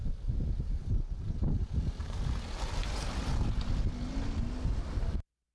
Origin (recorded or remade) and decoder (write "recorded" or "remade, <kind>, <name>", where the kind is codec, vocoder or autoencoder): recorded